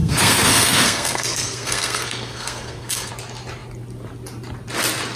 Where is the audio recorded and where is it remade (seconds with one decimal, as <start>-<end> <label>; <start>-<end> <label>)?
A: 0.0-3.1 remade; 3.1-5.2 recorded